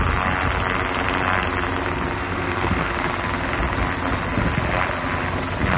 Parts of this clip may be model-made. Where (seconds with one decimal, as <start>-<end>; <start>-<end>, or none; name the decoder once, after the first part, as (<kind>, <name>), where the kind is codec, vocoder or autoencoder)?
2.2-2.9 (codec, SNAC)